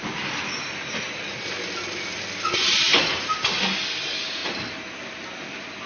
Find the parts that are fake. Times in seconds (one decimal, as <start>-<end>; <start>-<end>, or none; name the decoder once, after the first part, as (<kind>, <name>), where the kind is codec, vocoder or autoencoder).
none